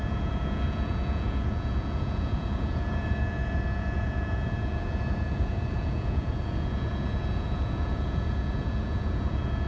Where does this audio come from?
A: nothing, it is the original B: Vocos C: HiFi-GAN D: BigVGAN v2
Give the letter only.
B